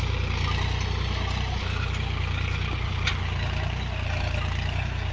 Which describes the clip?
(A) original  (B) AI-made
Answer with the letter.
A